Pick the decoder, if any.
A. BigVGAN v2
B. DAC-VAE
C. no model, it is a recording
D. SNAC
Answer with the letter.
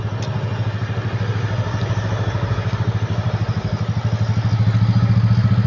C